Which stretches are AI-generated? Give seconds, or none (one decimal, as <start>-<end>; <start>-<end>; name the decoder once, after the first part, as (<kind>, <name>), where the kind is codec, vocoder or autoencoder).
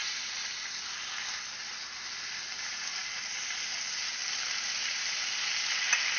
none